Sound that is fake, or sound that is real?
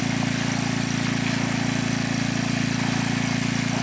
real